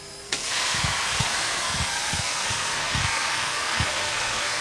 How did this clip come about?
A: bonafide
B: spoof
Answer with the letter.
B